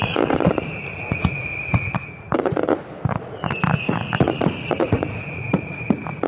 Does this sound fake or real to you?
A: fake